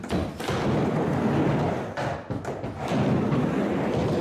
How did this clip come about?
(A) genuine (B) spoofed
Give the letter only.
A